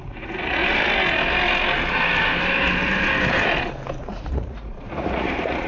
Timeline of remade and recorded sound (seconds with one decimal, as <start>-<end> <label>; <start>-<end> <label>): 0.0-0.6 remade; 0.6-4.0 recorded; 4.0-5.7 remade